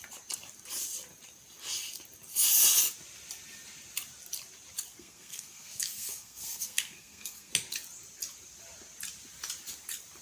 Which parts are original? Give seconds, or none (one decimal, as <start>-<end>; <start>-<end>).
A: 0.0-4.9; 7.5-10.2